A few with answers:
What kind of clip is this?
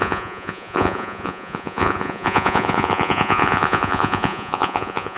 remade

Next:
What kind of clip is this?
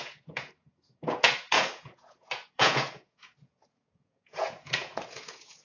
remade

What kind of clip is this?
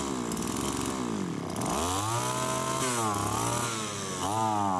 recorded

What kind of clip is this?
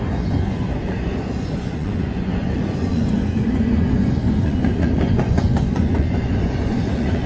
remade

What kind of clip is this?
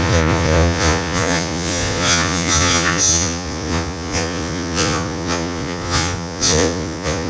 remade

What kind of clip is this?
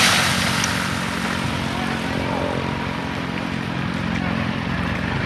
recorded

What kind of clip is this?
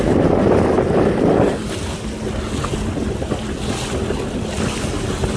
recorded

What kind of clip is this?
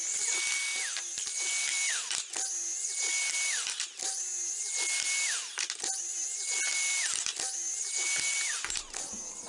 recorded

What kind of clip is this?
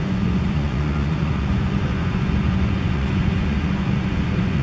remade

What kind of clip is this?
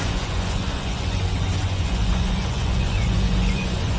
remade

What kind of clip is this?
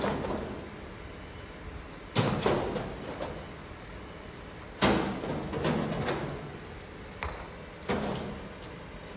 recorded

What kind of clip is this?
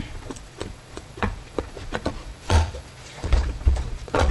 remade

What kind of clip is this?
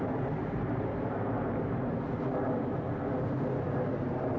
recorded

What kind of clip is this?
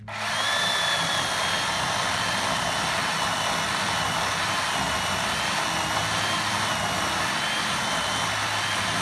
recorded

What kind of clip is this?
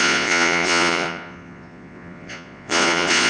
remade